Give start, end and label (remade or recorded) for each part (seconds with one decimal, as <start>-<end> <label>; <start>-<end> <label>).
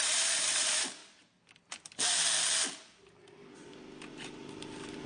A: 0.0-1.0 remade; 1.0-4.1 recorded; 4.1-5.1 remade